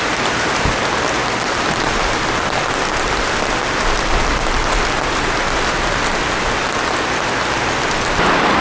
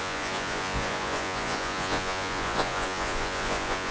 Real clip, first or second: first